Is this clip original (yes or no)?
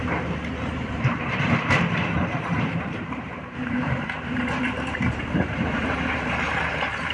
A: no